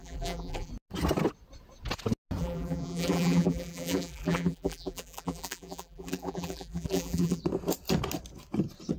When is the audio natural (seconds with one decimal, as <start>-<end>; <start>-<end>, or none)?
0.7-2.4; 7.4-9.0